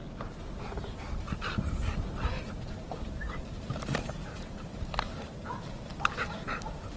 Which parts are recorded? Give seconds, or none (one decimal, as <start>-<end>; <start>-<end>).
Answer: 0.0-7.0